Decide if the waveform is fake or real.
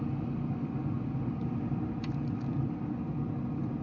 real